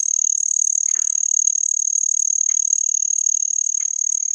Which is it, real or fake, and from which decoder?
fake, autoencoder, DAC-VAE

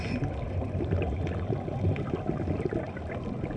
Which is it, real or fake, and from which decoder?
real